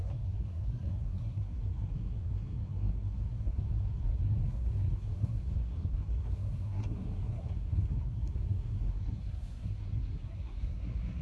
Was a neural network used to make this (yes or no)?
yes